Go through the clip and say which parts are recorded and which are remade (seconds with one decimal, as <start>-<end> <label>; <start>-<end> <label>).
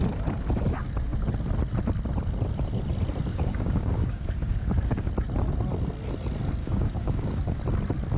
0.0-3.3 recorded; 3.3-5.1 remade; 5.1-6.6 recorded; 6.6-7.6 remade; 7.6-8.2 recorded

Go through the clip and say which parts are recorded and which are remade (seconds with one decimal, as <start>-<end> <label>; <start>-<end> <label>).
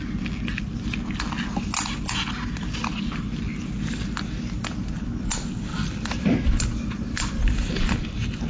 0.0-5.7 recorded; 5.7-7.7 remade; 7.7-8.5 recorded